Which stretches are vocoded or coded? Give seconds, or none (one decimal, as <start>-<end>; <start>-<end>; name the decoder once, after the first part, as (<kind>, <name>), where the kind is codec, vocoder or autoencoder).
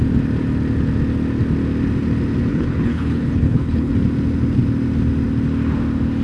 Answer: 2.5-3.9 (codec, HILCodec)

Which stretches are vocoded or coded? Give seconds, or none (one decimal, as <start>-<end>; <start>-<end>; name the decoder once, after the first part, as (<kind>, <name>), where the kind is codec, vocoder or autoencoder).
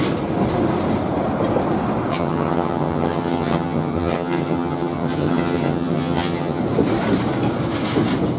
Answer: 2.1-6.6 (vocoder, HiFi-GAN)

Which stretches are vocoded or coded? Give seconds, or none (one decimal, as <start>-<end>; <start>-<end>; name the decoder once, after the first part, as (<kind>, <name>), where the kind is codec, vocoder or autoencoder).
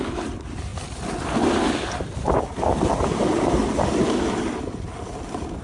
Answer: none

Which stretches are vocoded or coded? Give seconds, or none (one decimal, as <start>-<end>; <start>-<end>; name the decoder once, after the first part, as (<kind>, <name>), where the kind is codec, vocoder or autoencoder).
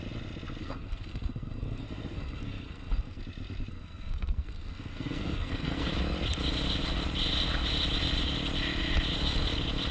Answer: 0.6-3.2 (codec, SNAC); 3.7-5.9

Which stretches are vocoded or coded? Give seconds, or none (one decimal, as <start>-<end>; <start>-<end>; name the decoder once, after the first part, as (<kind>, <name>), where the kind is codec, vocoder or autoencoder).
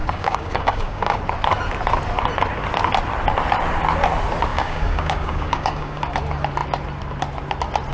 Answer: 0.0-1.2 (codec, DAC); 4.5-6.0